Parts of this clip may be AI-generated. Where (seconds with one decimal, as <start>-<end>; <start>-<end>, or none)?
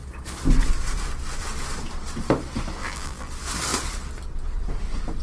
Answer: 2.8-3.3